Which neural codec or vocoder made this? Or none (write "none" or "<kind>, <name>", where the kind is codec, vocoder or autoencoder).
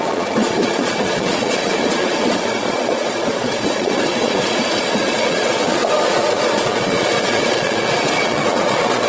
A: vocoder, Vocos